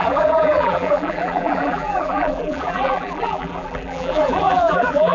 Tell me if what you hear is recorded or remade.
remade